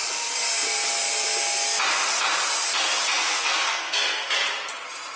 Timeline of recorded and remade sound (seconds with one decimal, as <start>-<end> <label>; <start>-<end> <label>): 0.0-3.2 recorded; 3.2-4.3 remade; 4.3-5.2 recorded